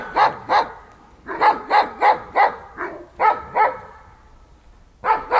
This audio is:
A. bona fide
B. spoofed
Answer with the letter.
A